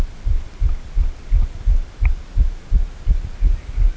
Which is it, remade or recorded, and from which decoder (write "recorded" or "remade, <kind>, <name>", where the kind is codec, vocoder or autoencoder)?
recorded